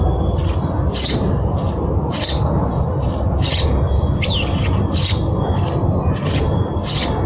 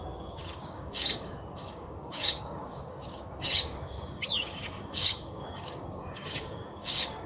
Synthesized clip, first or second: second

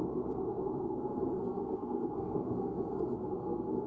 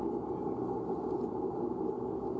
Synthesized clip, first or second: first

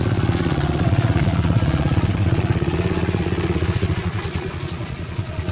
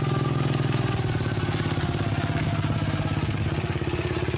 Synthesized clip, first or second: first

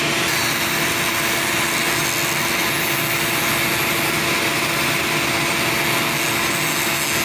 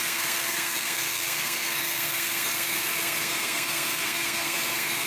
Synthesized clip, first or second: second